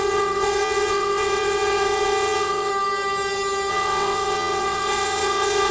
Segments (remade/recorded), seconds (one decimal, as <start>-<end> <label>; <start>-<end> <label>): 0.0-2.7 remade; 2.7-3.7 recorded; 3.7-5.7 remade